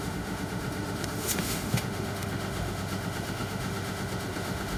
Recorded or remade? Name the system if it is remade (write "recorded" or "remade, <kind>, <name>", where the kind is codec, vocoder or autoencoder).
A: remade, autoencoder, DAC-VAE